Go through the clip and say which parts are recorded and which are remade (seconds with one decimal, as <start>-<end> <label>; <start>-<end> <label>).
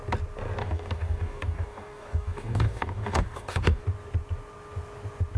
0.0-0.6 recorded; 0.6-3.8 remade; 3.8-5.4 recorded